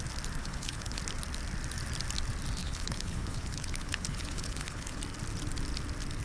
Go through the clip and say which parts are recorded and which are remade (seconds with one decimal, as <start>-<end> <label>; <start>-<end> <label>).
0.0-0.4 recorded; 0.4-1.0 remade; 1.0-2.6 recorded; 2.6-5.0 remade; 5.0-6.2 recorded